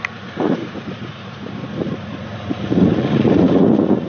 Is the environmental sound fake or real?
fake